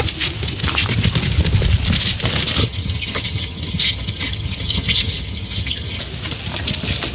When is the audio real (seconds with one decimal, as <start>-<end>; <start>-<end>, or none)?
0.0-2.6; 6.0-7.1